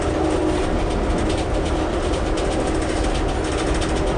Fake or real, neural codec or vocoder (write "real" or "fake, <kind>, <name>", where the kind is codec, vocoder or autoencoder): real